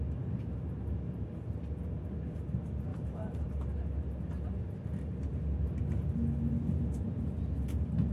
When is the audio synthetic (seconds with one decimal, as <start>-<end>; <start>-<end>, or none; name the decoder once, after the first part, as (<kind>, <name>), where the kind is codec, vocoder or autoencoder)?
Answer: 2.9-3.5 (vocoder, BigVGAN v2)